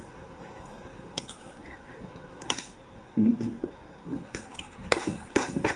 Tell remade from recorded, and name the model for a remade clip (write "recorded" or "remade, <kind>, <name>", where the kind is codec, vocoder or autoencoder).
remade, codec, SNAC